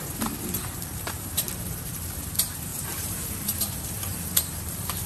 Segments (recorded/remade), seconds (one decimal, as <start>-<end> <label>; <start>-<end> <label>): 0.0-5.1 remade